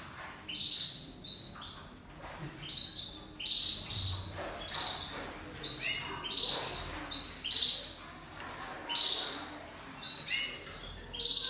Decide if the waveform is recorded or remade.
recorded